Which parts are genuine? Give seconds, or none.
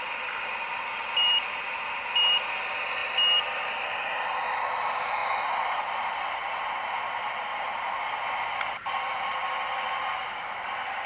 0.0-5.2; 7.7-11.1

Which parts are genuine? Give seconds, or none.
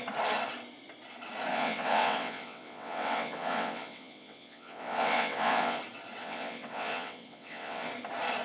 0.0-1.5; 5.8-6.2; 7.9-8.4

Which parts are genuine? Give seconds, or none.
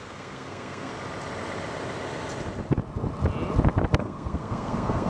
0.9-4.0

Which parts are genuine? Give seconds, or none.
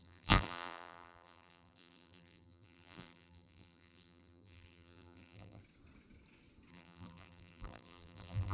5.6-6.7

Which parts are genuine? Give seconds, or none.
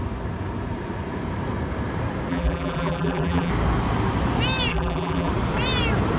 0.0-2.3; 3.5-4.7; 5.3-6.2